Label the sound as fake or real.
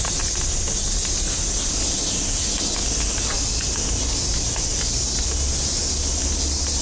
real